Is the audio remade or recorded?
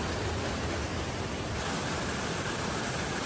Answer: recorded